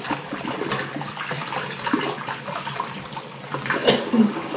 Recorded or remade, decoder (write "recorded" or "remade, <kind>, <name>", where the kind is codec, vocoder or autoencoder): recorded